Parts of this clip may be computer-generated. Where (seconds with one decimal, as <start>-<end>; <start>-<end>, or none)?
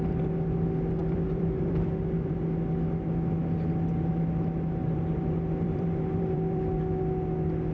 1.0-2.3; 4.8-6.8